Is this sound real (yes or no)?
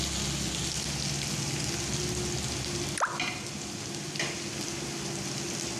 yes